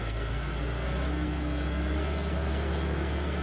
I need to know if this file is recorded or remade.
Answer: remade